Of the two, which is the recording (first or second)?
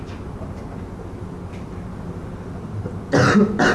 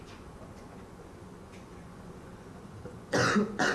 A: first